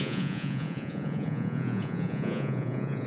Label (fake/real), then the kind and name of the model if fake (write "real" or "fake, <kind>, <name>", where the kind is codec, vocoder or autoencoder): fake, vocoder, Vocos